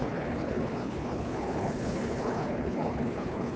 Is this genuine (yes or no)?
no